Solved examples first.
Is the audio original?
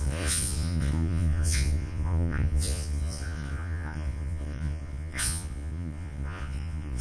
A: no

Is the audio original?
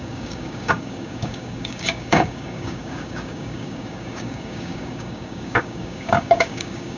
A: no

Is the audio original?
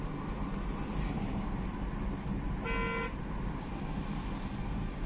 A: yes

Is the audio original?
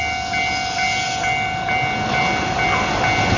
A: yes